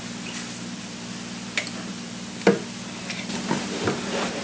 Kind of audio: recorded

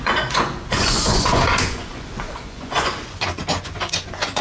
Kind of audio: remade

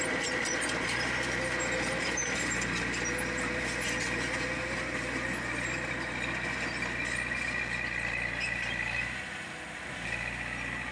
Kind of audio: recorded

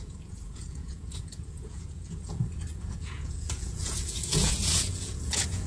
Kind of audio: remade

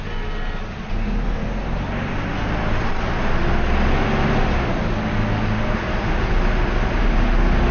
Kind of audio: recorded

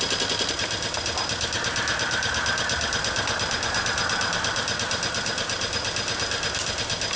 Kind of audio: recorded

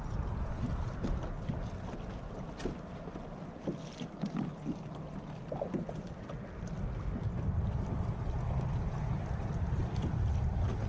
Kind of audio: recorded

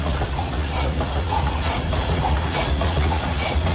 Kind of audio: remade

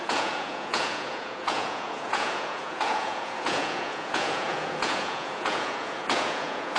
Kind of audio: remade